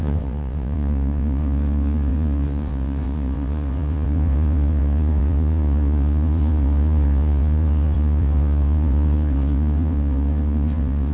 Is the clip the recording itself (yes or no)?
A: no